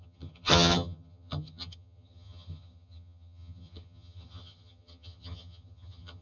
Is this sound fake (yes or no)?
yes